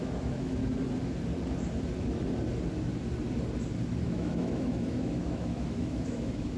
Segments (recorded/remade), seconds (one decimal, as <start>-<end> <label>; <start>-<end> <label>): 0.0-0.6 remade; 0.6-4.0 recorded; 4.0-6.6 remade